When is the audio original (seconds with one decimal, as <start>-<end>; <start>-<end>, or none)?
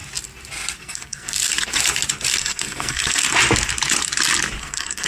0.0-0.8; 1.5-2.4; 3.2-4.6